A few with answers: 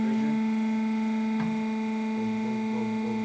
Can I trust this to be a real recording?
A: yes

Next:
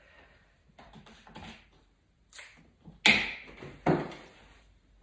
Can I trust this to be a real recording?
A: yes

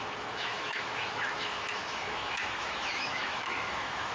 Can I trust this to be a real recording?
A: no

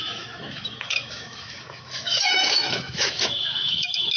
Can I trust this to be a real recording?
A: no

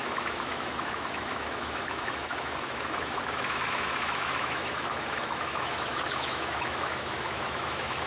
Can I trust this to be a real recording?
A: no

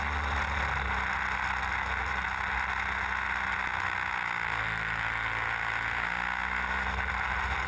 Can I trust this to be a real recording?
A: yes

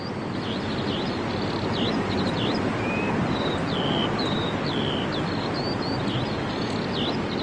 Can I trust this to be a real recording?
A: yes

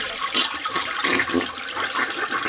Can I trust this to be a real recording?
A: yes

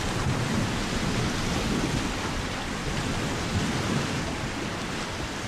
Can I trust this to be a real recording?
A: yes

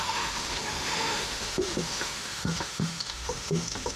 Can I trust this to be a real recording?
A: no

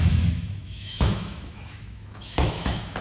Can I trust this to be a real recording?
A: no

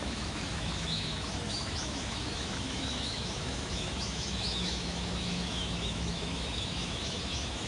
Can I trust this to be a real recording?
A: no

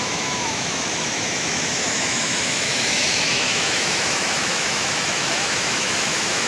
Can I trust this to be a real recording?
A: no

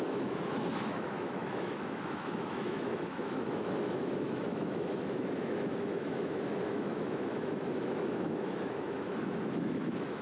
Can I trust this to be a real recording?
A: no